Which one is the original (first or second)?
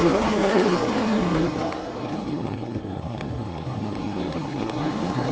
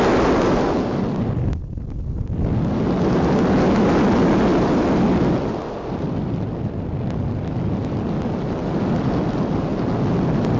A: second